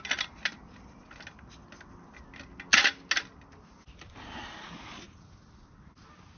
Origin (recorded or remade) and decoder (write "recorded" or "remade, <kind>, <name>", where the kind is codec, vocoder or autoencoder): recorded